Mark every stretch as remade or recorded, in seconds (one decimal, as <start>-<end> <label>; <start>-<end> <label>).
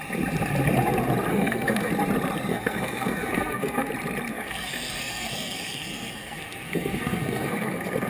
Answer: 0.0-1.3 recorded; 1.3-1.9 remade; 1.9-2.5 recorded; 2.5-3.9 remade; 3.9-4.3 recorded; 4.3-8.1 remade